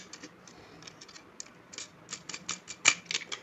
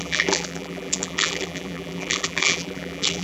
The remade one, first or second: second